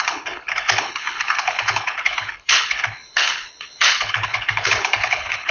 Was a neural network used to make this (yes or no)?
yes